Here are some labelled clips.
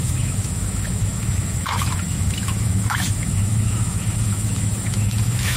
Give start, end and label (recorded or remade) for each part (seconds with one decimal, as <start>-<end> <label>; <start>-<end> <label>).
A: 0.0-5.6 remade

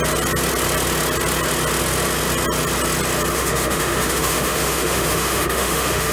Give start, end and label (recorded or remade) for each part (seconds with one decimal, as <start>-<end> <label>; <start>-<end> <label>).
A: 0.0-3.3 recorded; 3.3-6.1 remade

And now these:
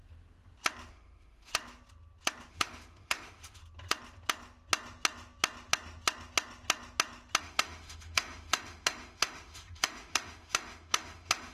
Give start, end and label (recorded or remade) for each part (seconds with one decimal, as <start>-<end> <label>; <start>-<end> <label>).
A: 0.0-0.9 recorded; 0.9-1.5 remade; 1.5-2.5 recorded; 2.5-3.6 remade; 3.6-7.4 recorded; 7.4-11.5 remade

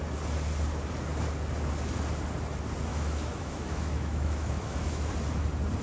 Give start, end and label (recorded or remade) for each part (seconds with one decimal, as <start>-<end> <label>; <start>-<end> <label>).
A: 0.0-2.9 recorded; 2.9-5.1 remade; 5.1-5.8 recorded

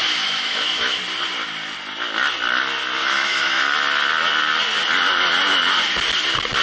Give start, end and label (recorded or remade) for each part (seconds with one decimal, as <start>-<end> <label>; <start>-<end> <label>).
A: 0.0-1.0 remade; 1.0-3.0 recorded; 3.0-3.6 remade; 3.6-6.6 recorded

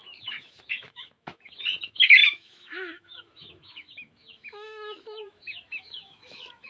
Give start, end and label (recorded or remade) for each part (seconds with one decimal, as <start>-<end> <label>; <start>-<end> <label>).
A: 0.0-6.7 remade

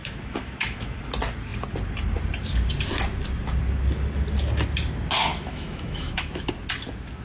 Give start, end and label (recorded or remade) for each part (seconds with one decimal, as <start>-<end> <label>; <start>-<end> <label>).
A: 0.0-1.0 remade; 1.0-5.3 recorded; 5.3-6.4 remade; 6.4-7.2 recorded

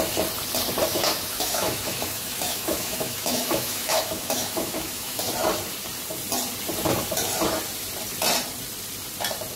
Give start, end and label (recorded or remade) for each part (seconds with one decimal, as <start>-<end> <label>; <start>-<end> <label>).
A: 0.0-0.9 recorded; 0.9-5.3 remade; 5.3-9.6 recorded